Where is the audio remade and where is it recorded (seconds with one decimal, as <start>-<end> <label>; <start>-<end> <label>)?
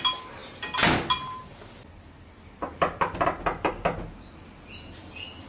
0.0-5.5 recorded